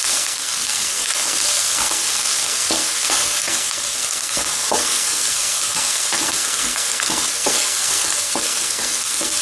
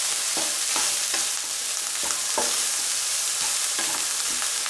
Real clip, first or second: second